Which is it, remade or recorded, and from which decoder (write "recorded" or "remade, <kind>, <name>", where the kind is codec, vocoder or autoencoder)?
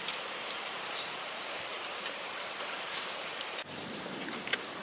remade, vocoder, BigVGAN v2